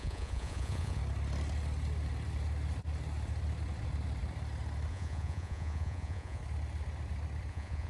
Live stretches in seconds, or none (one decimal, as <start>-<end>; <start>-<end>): 1.0-4.9; 6.4-7.5